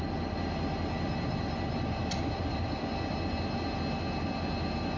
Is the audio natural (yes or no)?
yes